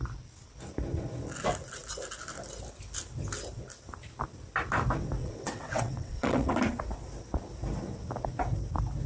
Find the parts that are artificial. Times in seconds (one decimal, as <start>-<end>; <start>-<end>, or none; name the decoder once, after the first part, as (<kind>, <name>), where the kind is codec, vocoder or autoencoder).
5.2-6.5 (vocoder, WaveNeXt)